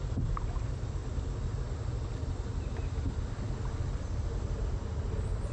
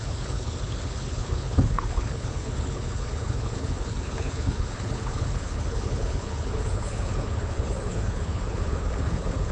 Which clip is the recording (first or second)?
first